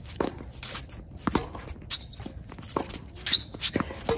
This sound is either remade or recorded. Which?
recorded